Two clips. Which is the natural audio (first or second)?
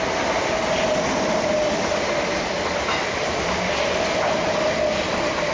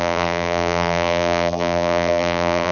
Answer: first